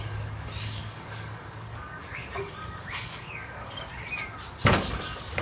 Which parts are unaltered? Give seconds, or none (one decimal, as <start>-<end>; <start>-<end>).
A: 3.9-4.6